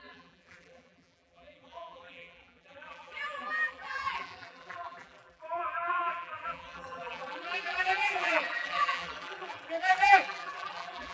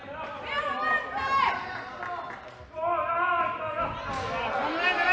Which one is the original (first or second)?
second